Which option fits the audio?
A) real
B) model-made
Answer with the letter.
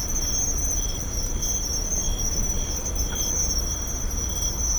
A